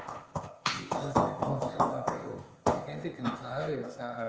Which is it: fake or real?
fake